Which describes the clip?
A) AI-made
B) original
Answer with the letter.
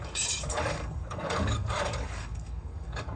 A